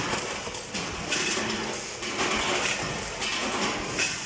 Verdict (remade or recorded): recorded